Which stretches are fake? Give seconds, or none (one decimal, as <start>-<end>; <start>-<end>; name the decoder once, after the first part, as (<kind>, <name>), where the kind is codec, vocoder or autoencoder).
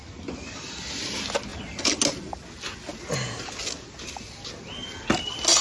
none